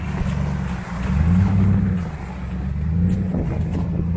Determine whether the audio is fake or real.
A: real